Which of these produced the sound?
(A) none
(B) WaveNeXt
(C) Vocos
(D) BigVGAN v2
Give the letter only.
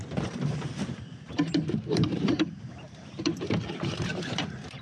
D